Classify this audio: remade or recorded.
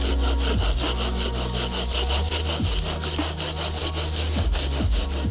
recorded